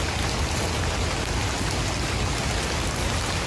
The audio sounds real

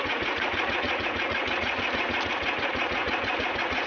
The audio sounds fake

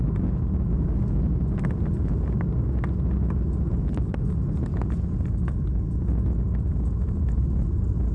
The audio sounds real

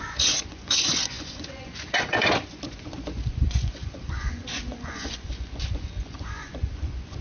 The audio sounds fake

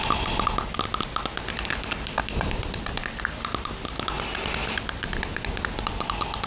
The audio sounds real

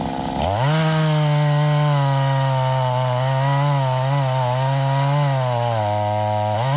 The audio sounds real